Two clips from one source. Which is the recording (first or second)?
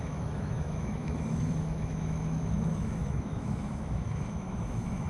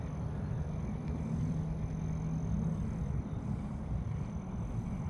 second